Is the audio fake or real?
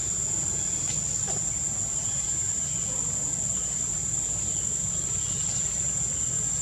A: real